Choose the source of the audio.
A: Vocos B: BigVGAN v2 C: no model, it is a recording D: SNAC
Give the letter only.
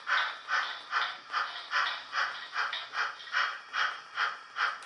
C